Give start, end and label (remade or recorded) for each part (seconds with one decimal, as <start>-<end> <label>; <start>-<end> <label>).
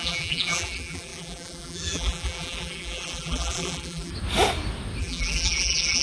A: 0.0-4.1 remade; 4.1-5.0 recorded; 5.0-6.0 remade